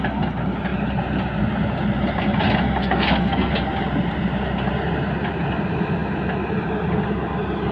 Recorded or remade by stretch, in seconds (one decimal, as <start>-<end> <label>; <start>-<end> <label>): 0.0-2.8 recorded; 2.8-3.5 remade; 3.5-7.7 recorded